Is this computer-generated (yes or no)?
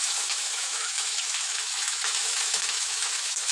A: yes